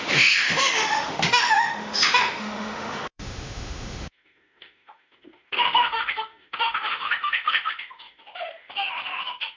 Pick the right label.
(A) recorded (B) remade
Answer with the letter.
B